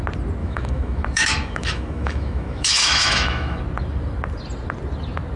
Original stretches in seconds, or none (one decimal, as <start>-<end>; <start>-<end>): 0.0-0.4; 3.6-5.4